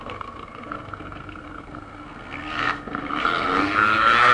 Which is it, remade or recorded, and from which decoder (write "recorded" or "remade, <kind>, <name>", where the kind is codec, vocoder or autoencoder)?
remade, codec, SNAC